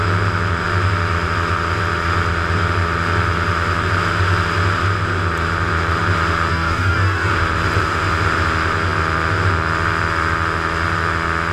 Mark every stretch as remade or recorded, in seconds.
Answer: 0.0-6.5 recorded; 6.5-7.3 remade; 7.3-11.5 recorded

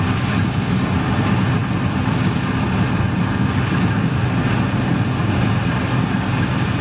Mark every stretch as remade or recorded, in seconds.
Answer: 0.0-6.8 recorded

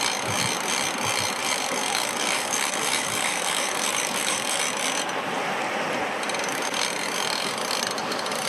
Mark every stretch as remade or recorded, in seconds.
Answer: 0.0-1.4 recorded; 1.4-4.6 remade; 4.6-8.5 recorded